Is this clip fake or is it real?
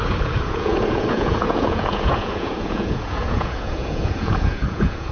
fake